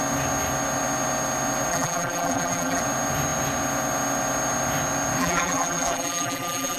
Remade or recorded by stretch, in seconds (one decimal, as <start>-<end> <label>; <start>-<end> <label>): 0.0-1.7 recorded; 1.7-2.8 remade; 2.8-5.2 recorded; 5.2-6.8 remade